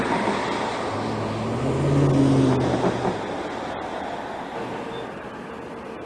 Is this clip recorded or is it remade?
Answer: recorded